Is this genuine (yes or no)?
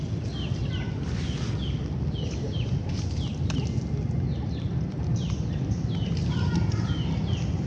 yes